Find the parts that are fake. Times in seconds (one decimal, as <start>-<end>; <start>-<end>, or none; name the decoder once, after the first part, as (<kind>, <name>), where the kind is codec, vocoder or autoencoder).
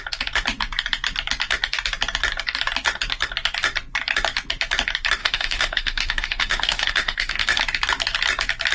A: 5.2-7.6 (autoencoder, DAC-VAE)